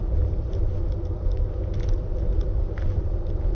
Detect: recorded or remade recorded